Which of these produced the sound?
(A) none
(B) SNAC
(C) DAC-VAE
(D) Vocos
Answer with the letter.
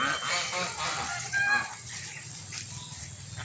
A